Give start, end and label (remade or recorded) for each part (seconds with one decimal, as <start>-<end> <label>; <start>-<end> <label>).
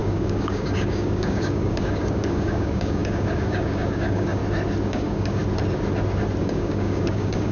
0.0-4.4 remade; 4.4-4.9 recorded; 4.9-5.4 remade; 5.4-6.4 recorded; 6.4-7.5 remade